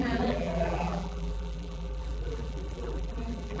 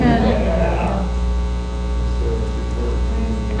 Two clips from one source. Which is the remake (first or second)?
first